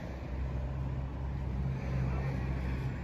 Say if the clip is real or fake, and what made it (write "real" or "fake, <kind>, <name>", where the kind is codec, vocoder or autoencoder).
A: real